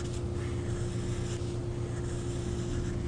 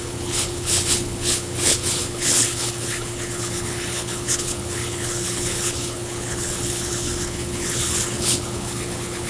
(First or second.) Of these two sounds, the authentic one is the first